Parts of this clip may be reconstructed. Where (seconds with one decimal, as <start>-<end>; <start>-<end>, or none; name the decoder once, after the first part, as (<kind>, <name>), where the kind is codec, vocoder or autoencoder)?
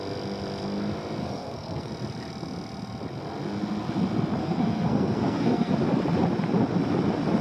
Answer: 1.2-1.9 (codec, SNAC); 4.4-5.7